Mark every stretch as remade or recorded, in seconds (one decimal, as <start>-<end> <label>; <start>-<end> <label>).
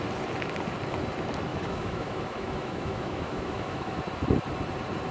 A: 0.0-1.5 recorded; 1.5-4.0 remade; 4.0-5.1 recorded